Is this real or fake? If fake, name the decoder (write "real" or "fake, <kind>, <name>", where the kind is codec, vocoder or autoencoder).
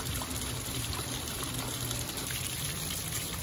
fake, vocoder, BigVGAN v2